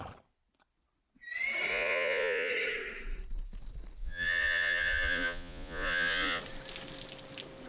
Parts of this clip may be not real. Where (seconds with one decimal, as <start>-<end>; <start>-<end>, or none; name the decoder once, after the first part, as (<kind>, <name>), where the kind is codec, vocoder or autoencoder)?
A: 1.7-2.5 (vocoder, Vocos); 4.0-6.4